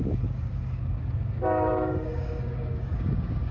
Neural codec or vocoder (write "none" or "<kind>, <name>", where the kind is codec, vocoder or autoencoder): codec, DAC